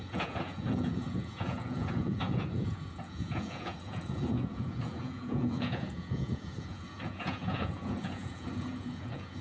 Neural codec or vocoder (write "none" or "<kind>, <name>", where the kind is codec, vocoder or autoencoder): vocoder, Vocos